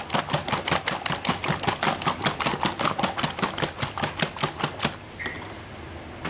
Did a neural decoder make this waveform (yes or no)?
no